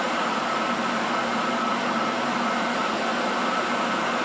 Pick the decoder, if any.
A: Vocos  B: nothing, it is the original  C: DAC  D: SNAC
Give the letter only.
B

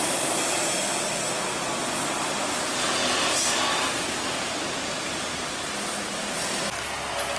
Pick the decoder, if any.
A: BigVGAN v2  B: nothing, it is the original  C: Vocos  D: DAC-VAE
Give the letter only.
B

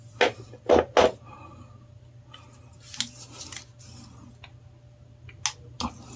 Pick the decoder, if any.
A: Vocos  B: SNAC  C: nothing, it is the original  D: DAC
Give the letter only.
C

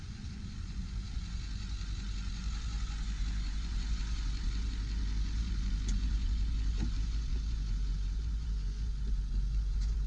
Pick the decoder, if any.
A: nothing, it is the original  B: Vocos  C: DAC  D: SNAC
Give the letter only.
B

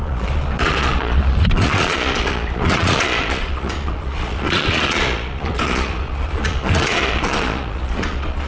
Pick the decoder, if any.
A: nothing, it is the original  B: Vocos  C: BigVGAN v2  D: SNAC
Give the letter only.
B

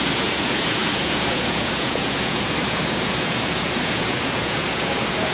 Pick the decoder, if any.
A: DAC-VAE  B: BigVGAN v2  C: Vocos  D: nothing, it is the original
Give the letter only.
C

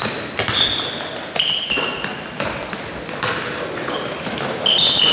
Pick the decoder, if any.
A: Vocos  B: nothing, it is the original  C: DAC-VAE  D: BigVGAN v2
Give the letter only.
B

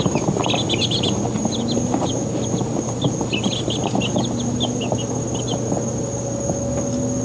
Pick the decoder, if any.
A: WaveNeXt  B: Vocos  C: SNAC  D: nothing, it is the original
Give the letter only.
D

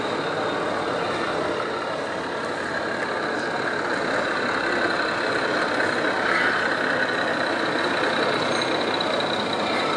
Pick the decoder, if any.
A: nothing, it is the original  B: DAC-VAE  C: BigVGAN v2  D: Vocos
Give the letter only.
A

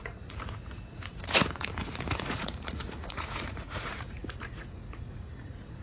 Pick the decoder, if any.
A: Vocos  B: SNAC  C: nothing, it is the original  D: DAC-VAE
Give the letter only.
A